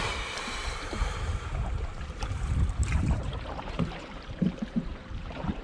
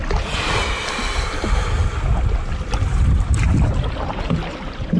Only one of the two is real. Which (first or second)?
second